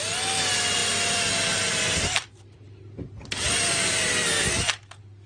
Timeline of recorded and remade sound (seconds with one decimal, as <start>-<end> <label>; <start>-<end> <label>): 0.0-0.8 recorded; 0.8-4.0 remade; 4.0-5.3 recorded